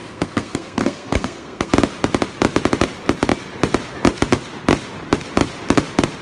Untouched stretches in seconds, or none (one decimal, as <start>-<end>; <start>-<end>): 1.7-6.2